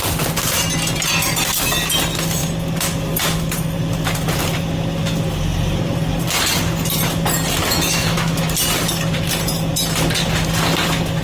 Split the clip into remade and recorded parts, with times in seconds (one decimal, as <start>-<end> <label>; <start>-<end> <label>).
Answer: 0.0-7.6 recorded; 7.6-8.4 remade; 8.4-11.2 recorded

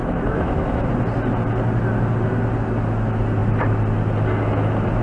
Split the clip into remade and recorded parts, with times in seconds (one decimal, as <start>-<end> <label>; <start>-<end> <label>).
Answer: 0.0-0.9 remade; 0.9-5.0 recorded

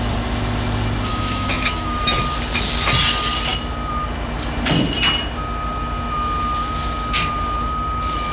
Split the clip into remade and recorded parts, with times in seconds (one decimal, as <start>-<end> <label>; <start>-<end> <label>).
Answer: 0.0-1.1 recorded; 1.1-2.2 remade; 2.2-8.3 recorded

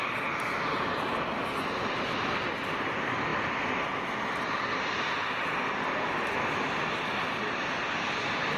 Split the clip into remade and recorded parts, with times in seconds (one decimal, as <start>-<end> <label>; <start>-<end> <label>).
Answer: 0.0-8.6 recorded

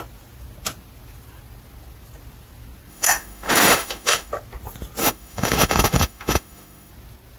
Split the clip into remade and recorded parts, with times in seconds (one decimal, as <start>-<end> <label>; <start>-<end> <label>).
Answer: 0.0-2.9 recorded; 2.9-4.3 remade; 4.3-5.0 recorded; 5.0-6.9 remade; 6.9-7.4 recorded